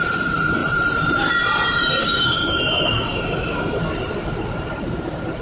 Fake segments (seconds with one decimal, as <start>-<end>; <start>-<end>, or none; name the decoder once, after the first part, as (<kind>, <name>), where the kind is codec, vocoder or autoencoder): 2.0-3.8 (autoencoder, DAC-VAE)